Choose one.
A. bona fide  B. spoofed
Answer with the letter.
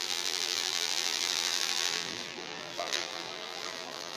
B